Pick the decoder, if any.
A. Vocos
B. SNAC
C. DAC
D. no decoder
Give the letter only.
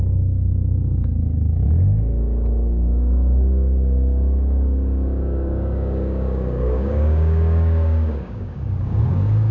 C